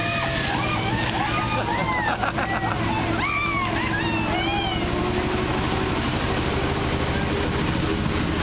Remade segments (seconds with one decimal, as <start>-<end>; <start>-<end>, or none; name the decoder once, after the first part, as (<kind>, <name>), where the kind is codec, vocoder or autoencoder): 6.1-6.8 (vocoder, BigVGAN v2)